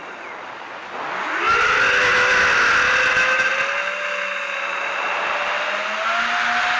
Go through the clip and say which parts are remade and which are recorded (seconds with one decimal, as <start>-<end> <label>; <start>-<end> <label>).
0.0-6.8 recorded